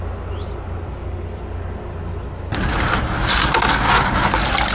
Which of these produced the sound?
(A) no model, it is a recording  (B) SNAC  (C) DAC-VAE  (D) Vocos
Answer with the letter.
A